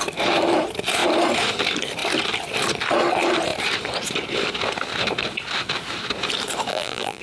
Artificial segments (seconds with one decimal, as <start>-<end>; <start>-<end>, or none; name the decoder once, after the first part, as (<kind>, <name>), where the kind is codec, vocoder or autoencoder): 6.7-7.2 (vocoder, BigVGAN v2)